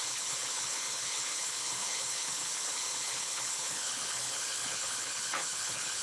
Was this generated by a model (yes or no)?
yes